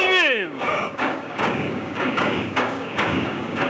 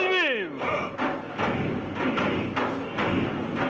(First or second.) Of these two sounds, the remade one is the first